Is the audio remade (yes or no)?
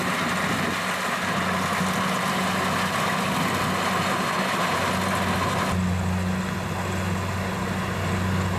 no